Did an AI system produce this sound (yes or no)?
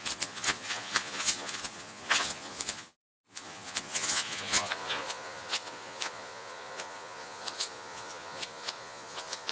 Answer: yes